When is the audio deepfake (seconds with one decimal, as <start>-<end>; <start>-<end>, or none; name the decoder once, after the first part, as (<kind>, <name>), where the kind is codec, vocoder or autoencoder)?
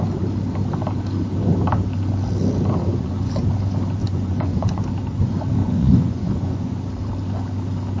2.8-3.3 (vocoder, Vocos); 4.0-4.8; 5.6-6.8